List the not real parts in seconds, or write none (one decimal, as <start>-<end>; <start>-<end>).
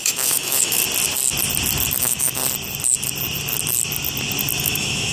0.0-0.8; 2.0-2.4; 4.6-5.1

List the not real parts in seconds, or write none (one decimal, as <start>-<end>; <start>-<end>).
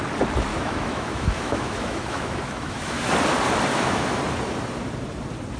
0.5-3.1; 3.7-4.2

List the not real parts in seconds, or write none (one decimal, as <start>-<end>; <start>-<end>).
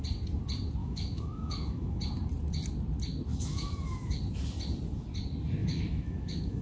0.8-2.0; 3.3-4.2; 5.6-6.6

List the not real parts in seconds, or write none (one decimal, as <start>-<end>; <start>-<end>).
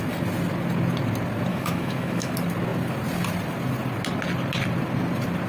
1.5-2.3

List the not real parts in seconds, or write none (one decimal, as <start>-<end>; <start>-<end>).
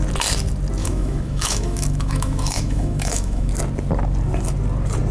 0.8-3.5